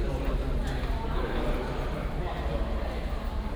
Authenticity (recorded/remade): recorded